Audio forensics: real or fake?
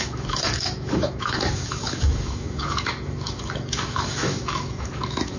fake